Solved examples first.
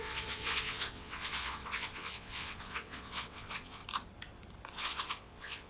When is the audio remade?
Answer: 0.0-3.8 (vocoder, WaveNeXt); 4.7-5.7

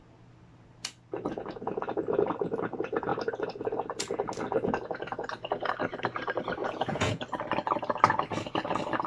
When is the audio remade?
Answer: 6.6-7.2 (vocoder, Vocos)

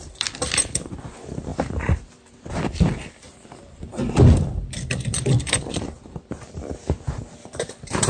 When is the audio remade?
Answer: 0.0-8.1 (vocoder, BigVGAN v2)